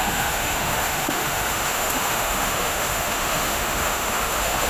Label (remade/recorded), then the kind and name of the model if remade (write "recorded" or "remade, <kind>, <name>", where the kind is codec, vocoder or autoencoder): remade, autoencoder, DAC-VAE